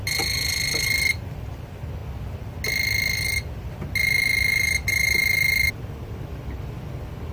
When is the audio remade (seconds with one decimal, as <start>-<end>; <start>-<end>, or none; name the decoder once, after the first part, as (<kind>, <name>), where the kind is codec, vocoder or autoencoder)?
none